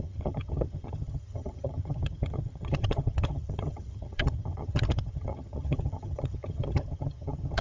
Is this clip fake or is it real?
fake